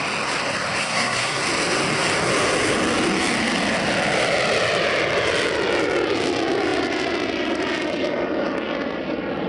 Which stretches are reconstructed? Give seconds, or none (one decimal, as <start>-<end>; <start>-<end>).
0.8-1.4